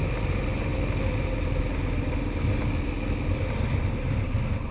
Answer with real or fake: real